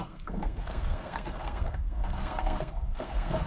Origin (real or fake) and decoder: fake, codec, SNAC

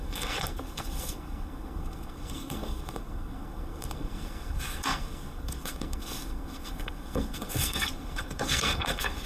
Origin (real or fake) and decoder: fake, codec, SNAC